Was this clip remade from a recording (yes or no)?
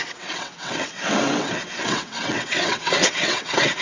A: yes